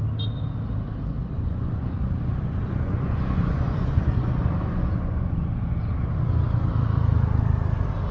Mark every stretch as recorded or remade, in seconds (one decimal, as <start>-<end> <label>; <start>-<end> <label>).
0.0-1.2 recorded; 1.2-5.5 remade; 5.5-8.1 recorded